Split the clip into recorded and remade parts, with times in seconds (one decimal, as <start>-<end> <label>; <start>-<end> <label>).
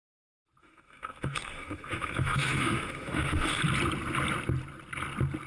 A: 0.0-0.6 recorded; 0.6-3.6 remade; 3.6-5.5 recorded